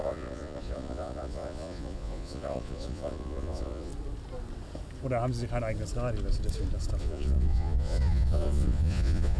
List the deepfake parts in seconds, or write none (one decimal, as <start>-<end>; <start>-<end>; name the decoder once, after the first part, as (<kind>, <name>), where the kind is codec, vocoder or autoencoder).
0.0-3.9 (vocoder, Vocos); 7.0-9.4